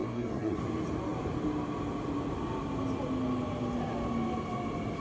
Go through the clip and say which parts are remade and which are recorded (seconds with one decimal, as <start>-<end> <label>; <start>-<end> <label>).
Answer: 0.0-0.6 remade; 0.6-5.0 recorded